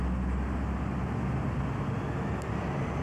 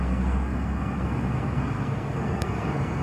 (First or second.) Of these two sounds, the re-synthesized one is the second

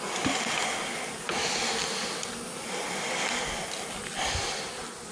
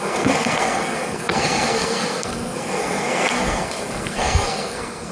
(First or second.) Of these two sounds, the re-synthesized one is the second